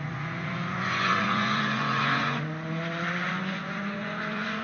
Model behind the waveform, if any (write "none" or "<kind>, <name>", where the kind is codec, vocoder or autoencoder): vocoder, Vocos